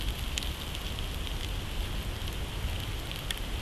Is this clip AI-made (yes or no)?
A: no